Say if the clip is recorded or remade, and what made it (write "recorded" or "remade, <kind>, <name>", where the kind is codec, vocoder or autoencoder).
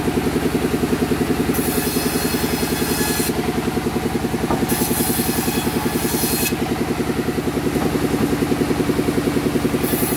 recorded